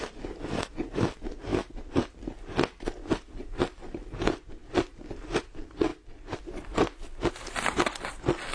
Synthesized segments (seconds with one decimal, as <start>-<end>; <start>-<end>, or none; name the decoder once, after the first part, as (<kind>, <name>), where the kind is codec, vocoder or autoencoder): none

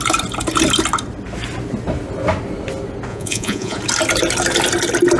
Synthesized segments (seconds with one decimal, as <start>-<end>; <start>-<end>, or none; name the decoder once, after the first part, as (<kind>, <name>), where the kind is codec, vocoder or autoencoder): 3.1-3.8 (vocoder, Vocos)